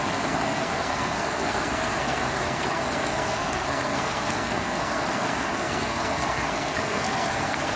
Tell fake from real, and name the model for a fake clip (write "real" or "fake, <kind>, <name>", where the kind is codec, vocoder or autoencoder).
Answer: fake, codec, SNAC